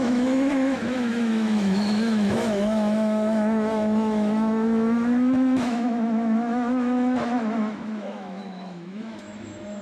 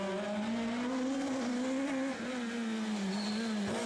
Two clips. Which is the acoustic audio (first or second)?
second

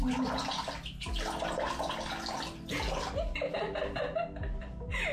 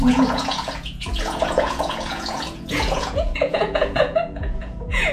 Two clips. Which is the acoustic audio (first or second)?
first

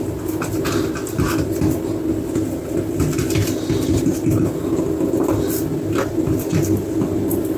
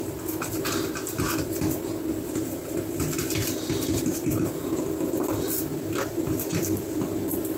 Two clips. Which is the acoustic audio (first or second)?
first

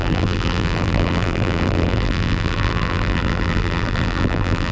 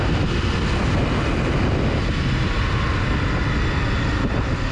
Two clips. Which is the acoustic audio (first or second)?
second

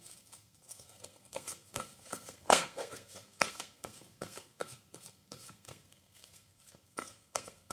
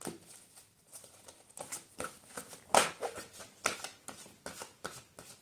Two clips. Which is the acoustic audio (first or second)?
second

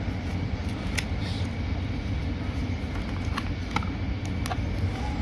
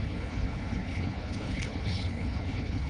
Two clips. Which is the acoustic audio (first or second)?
first